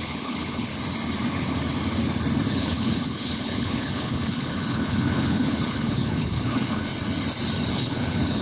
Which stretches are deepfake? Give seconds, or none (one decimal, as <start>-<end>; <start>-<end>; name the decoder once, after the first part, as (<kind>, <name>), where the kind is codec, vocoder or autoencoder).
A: 0.0-0.7 (codec, HILCodec); 2.5-6.9; 7.7-8.4